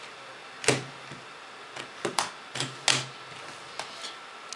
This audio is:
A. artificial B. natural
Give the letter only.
B